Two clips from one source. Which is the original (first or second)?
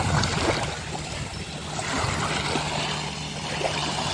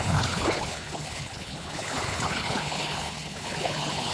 first